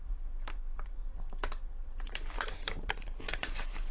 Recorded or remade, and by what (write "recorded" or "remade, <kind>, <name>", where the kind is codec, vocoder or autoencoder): remade, vocoder, BigVGAN v2